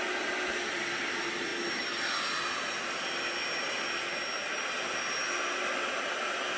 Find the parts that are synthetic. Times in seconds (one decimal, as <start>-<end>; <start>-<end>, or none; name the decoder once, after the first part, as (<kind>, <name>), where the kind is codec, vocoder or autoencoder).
none